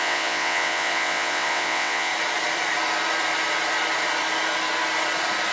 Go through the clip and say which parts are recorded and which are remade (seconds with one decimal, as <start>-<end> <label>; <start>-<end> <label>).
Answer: 0.0-2.1 remade; 2.1-5.5 recorded